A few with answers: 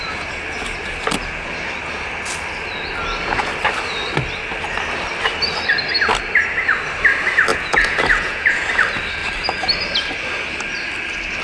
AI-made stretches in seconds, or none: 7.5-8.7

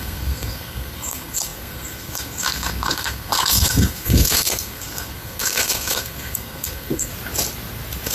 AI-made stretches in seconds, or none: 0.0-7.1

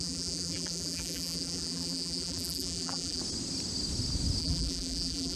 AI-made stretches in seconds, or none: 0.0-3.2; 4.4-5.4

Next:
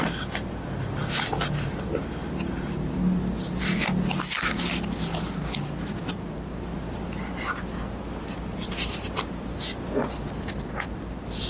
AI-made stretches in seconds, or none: none

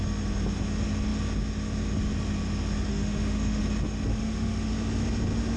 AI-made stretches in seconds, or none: 2.9-3.6; 4.1-4.7